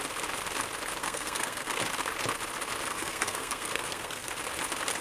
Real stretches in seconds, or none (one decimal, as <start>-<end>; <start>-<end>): 0.0-1.0; 1.8-2.9; 4.3-5.0